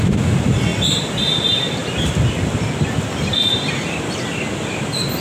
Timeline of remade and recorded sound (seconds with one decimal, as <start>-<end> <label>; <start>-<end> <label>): 0.0-5.2 recorded